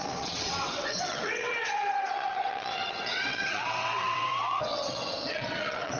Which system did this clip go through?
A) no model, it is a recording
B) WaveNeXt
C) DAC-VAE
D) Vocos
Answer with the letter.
B